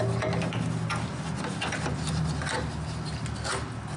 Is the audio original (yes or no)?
yes